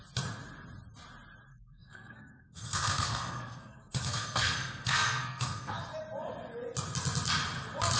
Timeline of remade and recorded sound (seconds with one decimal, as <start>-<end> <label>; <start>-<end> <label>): 0.0-1.5 recorded; 1.5-5.7 remade; 5.7-8.0 recorded